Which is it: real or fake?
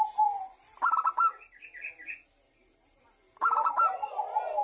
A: real